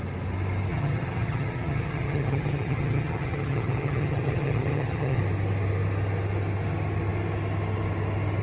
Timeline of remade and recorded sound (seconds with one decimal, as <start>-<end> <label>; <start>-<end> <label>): 0.0-0.7 recorded; 0.7-5.2 remade; 5.2-8.4 recorded